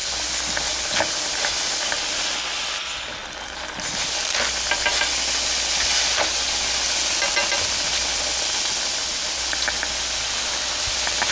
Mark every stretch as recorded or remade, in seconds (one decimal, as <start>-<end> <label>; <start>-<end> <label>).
0.0-11.3 recorded